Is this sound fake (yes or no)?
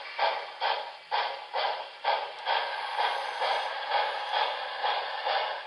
no